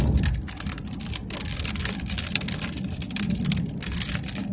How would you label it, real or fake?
real